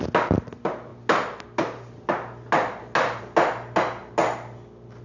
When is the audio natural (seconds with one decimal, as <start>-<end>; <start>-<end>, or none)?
0.0-5.0